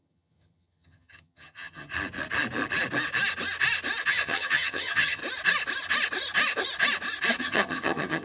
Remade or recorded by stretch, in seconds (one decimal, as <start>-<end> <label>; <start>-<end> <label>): 0.0-1.9 remade; 1.9-4.1 recorded; 4.1-5.2 remade; 5.2-7.4 recorded; 7.4-8.2 remade